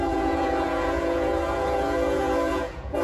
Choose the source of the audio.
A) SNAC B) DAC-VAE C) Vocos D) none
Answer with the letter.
C